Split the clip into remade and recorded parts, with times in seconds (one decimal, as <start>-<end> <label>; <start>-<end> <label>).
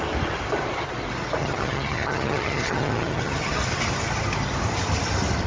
0.0-1.4 recorded; 1.4-3.6 remade; 3.6-5.5 recorded